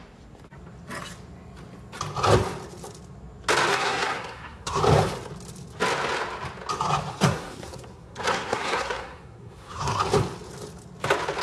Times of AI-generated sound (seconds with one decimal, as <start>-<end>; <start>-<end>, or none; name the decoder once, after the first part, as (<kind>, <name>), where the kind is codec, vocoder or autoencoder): 3.7-4.8 (codec, SNAC); 7.1-10.0